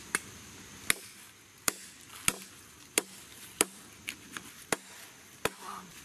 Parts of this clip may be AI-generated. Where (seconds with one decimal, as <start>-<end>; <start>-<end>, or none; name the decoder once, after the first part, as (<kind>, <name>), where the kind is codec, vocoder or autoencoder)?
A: 3.3-3.9 (vocoder, BigVGAN v2)

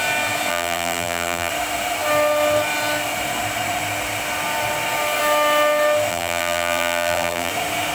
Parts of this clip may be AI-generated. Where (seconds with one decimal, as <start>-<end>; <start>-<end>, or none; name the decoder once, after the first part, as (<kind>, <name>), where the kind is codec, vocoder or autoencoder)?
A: 0.5-1.5 (vocoder, BigVGAN v2); 6.1-7.5

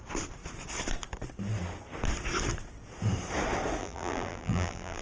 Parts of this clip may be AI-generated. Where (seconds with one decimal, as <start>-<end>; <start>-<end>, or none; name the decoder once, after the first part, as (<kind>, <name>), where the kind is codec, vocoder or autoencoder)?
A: 3.8-5.0 (vocoder, BigVGAN v2)

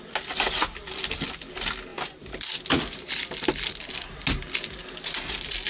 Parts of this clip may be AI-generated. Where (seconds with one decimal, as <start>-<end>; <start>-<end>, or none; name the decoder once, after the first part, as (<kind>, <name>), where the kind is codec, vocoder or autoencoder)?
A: 1.9-2.8 (vocoder, BigVGAN v2)

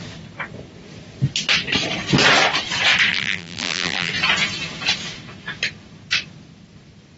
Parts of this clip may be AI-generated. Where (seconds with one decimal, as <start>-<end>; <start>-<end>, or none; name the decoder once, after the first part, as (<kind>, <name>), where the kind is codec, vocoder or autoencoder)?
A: 3.1-4.1 (vocoder, BigVGAN v2)

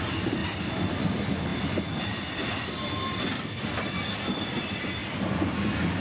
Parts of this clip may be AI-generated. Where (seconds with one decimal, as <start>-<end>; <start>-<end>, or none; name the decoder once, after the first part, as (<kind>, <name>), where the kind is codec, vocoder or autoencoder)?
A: none